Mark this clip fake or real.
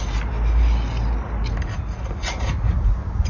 real